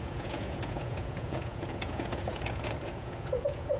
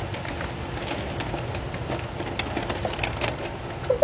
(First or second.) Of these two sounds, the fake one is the first